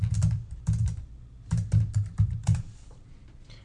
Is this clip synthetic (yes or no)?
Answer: yes